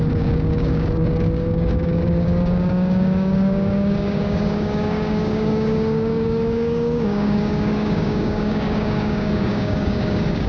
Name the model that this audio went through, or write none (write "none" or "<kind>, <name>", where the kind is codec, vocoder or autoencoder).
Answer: codec, DAC